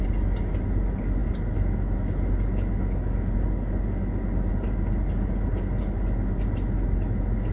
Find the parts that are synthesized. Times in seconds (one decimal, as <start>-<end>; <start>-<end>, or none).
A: none